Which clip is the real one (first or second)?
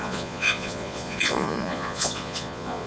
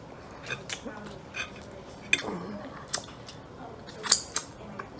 second